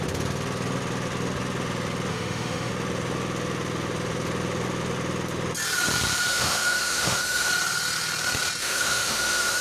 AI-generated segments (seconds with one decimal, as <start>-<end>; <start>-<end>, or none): 2.1-2.7; 6.3-7.5; 8.6-9.6